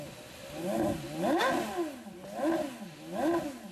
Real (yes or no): yes